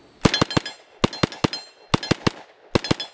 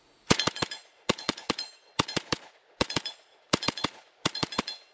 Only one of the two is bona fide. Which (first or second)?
first